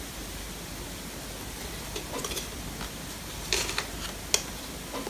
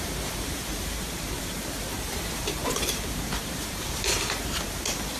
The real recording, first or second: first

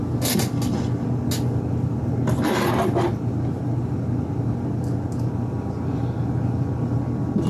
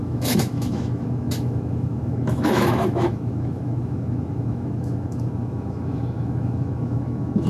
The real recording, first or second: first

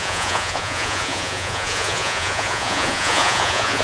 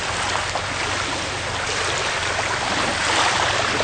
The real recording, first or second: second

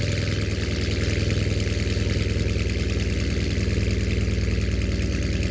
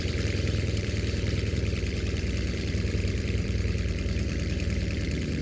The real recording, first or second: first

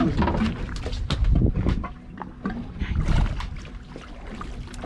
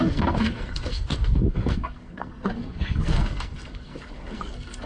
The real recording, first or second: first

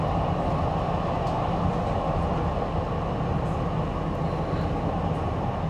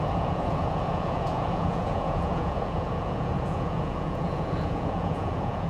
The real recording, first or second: first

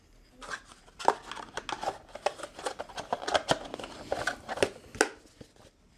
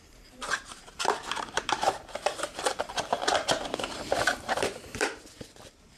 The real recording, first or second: first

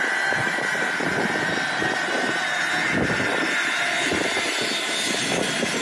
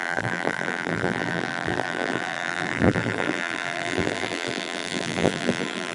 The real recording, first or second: first